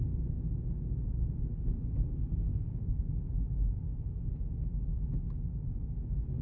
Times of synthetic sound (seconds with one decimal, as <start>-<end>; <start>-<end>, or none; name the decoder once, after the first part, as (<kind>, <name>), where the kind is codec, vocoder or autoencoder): 2.5-3.1 (codec, DAC)